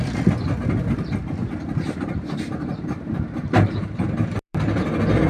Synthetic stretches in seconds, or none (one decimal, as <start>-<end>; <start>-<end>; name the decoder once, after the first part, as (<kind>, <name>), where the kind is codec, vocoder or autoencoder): 1.4-4.6 (vocoder, BigVGAN v2)